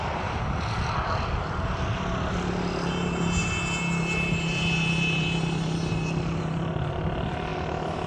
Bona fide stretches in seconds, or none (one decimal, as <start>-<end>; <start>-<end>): 0.0-8.1